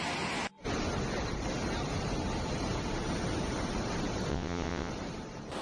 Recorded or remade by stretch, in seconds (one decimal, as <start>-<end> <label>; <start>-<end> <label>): 0.0-4.3 recorded; 4.3-4.9 remade; 4.9-5.6 recorded